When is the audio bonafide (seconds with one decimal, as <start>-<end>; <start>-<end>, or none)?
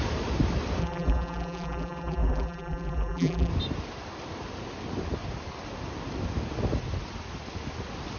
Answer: 0.0-0.8; 3.5-8.2